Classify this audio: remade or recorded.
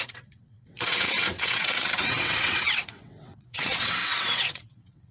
remade